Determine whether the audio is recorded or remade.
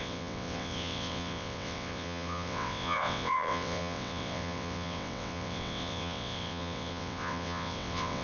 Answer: remade